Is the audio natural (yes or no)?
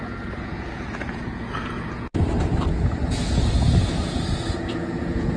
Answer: no